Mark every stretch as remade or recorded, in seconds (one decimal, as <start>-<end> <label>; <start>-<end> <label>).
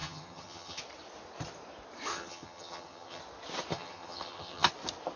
0.0-0.8 remade; 0.8-2.1 recorded; 2.1-3.2 remade; 3.2-3.7 recorded; 3.7-4.7 remade; 4.7-5.2 recorded